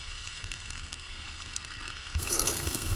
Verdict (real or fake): fake